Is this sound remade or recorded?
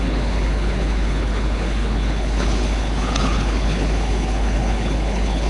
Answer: remade